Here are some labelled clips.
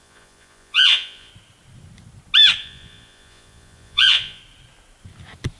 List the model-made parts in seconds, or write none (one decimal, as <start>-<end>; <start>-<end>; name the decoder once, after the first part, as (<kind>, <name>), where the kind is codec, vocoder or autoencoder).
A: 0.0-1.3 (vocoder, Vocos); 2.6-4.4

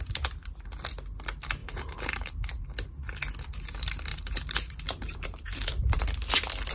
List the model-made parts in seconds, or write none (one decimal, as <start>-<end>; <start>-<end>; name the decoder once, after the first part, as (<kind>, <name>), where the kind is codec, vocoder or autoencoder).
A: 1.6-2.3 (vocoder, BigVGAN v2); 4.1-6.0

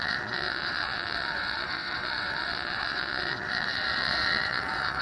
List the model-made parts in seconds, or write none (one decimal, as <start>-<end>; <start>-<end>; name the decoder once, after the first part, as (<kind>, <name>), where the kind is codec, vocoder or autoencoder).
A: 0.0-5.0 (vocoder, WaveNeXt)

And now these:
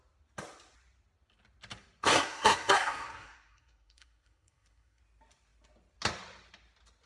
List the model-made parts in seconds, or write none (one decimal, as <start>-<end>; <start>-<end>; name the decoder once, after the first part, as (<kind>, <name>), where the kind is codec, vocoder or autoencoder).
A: 2.1-5.0 (codec, SNAC)

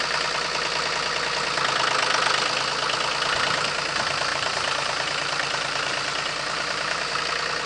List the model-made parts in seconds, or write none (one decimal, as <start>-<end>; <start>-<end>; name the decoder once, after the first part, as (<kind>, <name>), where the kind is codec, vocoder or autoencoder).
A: 4.3-7.2 (vocoder, BigVGAN v2)

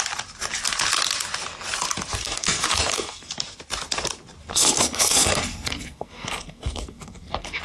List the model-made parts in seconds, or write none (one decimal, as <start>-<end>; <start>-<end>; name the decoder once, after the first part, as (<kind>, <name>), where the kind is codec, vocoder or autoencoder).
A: 2.2-3.3 (codec, SNAC); 4.5-7.6

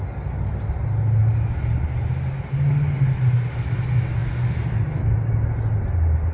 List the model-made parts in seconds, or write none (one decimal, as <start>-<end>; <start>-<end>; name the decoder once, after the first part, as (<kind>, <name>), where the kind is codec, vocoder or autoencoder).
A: none